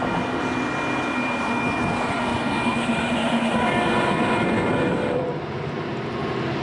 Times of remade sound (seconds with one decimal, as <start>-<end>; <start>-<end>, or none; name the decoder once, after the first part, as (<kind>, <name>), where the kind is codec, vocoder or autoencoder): 2.7-5.9 (vocoder, BigVGAN v2)